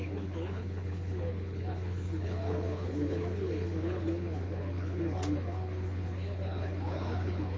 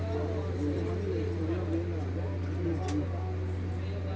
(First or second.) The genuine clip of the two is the second